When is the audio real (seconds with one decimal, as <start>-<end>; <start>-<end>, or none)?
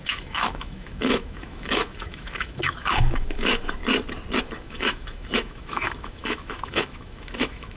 3.8-4.4